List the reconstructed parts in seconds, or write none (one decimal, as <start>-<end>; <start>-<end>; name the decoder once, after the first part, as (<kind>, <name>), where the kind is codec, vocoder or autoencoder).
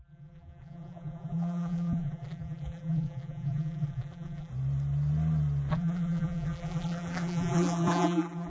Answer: 0.0-4.5 (vocoder, BigVGAN v2); 5.7-8.5